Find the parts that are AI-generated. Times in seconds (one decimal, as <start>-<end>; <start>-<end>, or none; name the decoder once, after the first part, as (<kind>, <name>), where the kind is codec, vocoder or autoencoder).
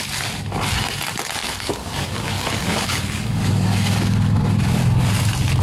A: 1.4-4.8 (codec, DAC)